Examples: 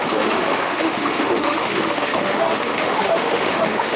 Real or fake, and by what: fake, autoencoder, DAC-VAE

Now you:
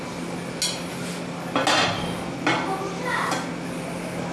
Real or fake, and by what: real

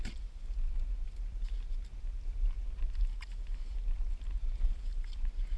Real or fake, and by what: real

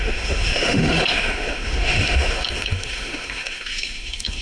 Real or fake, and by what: fake, autoencoder, DAC-VAE